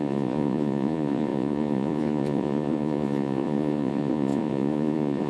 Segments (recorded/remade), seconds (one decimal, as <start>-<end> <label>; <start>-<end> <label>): 0.0-5.3 remade